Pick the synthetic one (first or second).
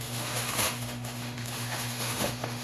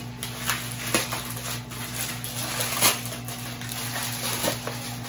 first